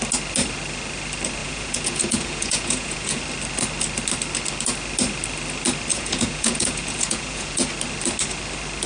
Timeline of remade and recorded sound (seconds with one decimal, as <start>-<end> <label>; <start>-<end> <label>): 0.0-1.4 recorded; 1.4-3.2 remade; 3.2-5.9 recorded; 5.9-7.7 remade; 7.7-8.9 recorded